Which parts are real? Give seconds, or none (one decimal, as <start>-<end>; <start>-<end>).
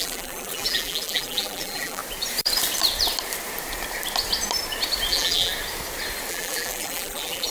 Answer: 2.0-5.1; 5.5-6.3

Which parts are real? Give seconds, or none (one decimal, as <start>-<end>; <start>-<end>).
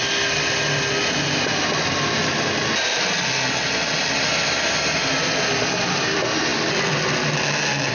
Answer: 0.0-7.9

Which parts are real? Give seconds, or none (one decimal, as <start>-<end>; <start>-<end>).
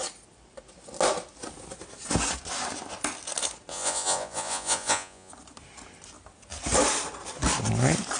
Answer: 0.0-3.7; 5.3-8.2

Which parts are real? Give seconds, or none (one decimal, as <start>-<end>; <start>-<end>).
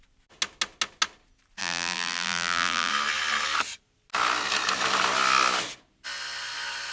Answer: 0.0-1.6; 2.9-6.9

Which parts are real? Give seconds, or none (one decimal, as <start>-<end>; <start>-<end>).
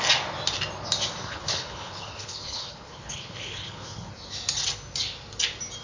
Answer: 0.0-1.2; 4.1-5.8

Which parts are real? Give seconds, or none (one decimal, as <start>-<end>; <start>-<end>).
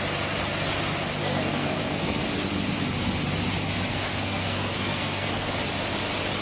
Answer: 0.0-1.2; 2.2-3.9; 5.6-6.4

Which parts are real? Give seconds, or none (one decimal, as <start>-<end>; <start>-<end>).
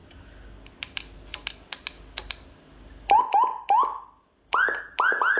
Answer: 0.0-5.4